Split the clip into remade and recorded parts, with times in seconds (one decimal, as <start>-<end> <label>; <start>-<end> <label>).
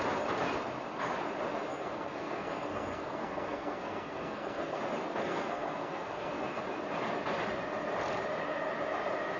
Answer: 0.0-1.7 recorded; 1.7-4.8 remade; 4.8-5.2 recorded; 5.2-6.6 remade; 6.6-9.4 recorded